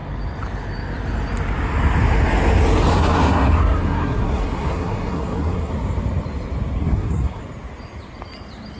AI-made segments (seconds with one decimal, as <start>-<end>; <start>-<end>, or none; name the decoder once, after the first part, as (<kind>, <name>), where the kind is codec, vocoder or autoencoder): 2.9-5.7 (codec, SNAC); 6.8-7.4